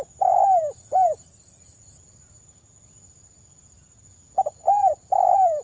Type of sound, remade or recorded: remade